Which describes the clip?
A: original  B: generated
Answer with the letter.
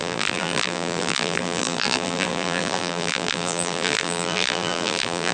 B